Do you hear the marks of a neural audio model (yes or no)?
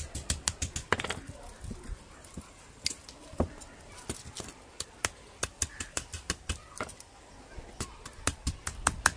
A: no